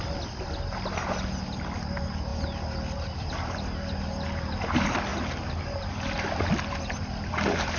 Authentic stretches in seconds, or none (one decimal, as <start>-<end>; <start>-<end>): 0.0-7.8